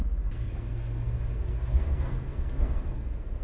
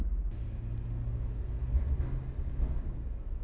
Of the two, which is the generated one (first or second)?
first